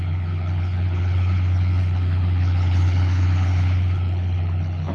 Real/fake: fake